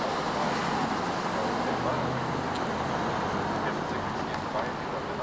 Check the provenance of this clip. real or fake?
real